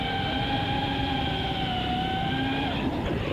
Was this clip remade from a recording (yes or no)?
no